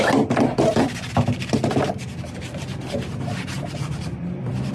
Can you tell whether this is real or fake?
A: real